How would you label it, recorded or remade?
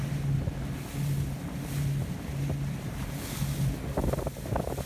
recorded